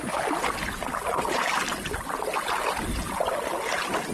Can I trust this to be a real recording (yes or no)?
yes